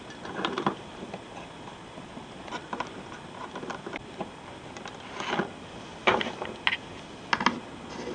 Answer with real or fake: real